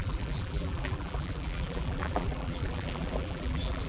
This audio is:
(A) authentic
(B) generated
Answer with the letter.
B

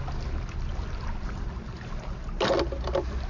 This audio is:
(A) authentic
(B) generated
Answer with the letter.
A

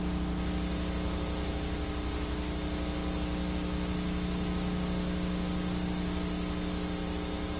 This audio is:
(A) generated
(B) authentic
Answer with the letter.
B